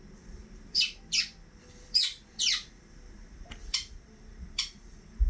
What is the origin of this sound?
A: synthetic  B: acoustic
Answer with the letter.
A